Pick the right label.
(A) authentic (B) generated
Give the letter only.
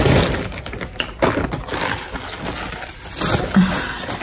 A